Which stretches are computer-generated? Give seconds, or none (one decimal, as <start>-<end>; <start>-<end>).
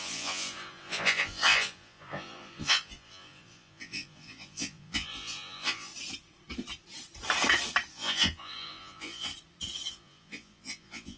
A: 0.0-5.9; 7.9-9.3; 9.9-11.2